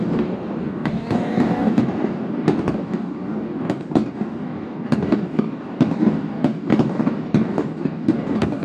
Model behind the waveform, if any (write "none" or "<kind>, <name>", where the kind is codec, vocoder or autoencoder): codec, DAC